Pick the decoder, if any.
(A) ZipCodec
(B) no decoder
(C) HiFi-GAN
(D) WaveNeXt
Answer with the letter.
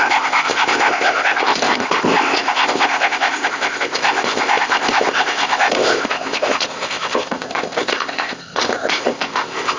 A